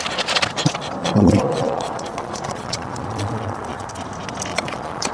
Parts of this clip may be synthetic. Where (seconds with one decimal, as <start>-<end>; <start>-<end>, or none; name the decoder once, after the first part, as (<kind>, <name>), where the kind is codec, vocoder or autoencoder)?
1.0-3.9 (vocoder, Vocos); 4.5-5.1